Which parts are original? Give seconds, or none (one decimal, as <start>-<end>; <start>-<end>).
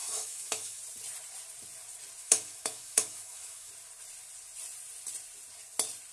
0.8-2.2; 3.7-6.1